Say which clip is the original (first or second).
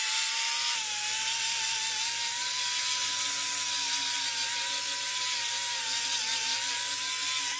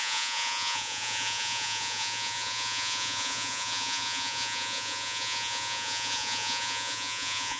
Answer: first